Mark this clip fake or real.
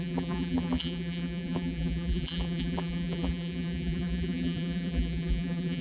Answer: fake